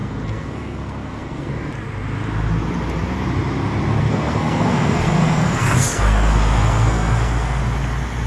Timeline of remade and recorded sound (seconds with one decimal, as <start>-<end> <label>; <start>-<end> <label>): 0.0-1.5 remade; 1.5-4.0 recorded; 4.0-7.6 remade; 7.6-8.3 recorded